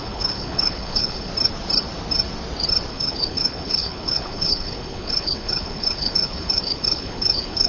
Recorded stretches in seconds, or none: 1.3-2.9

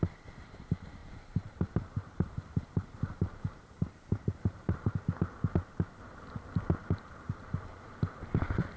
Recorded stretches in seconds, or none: 0.0-1.0; 4.9-6.8; 7.4-8.8